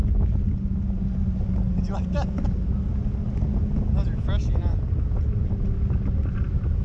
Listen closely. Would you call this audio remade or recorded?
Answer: recorded